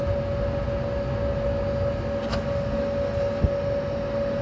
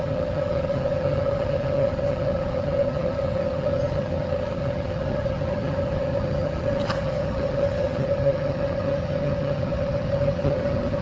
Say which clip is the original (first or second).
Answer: first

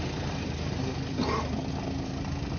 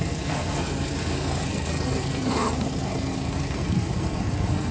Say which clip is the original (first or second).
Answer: first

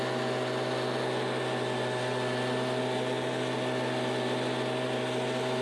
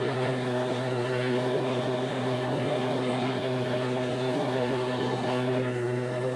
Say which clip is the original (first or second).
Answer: first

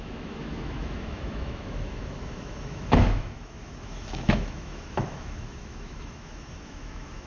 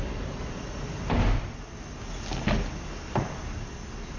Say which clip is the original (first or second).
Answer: second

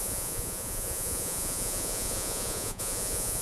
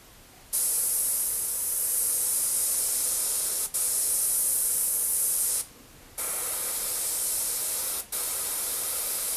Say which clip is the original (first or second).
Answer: second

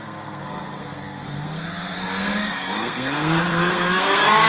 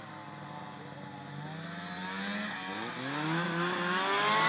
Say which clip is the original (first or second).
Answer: second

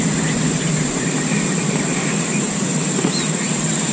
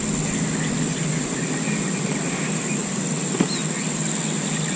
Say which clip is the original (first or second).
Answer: second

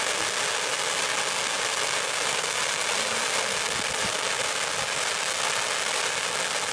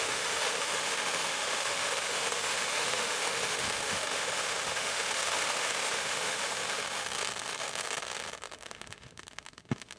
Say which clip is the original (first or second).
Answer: first